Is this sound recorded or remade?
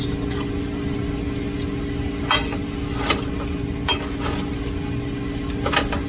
recorded